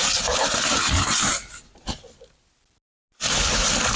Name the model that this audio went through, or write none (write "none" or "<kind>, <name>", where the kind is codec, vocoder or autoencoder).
none